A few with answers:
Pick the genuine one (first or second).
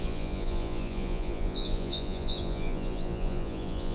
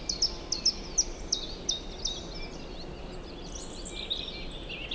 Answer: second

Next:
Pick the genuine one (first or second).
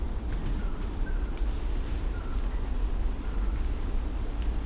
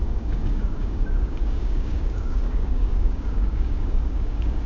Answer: first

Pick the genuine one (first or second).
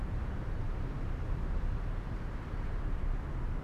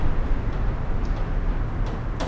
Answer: second